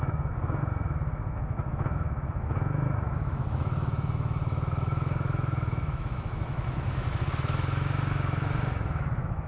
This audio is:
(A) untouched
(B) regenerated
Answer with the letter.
B